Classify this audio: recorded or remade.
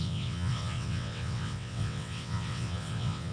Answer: remade